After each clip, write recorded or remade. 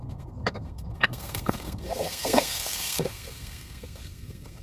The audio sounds remade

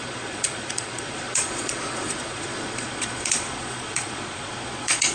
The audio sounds remade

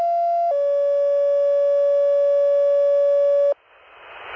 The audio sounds recorded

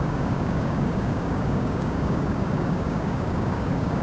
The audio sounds remade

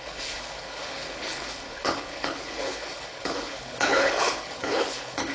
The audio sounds remade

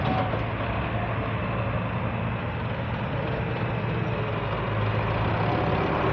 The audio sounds recorded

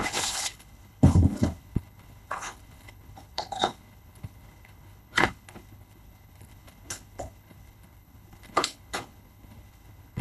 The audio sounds remade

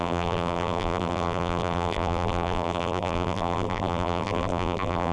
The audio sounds remade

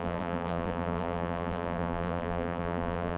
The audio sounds remade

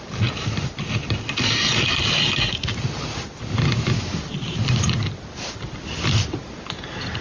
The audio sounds recorded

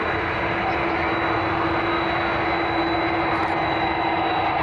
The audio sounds recorded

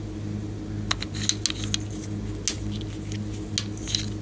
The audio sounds recorded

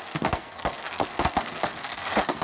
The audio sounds remade